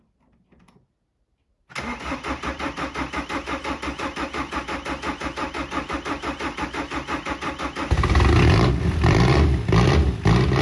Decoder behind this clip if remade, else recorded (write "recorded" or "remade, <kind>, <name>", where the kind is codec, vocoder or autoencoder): recorded